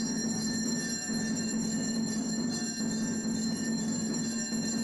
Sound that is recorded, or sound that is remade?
recorded